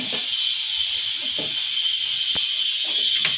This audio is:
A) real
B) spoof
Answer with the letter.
A